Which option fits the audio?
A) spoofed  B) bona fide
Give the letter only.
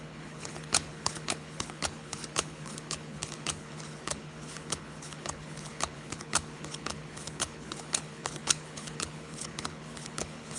A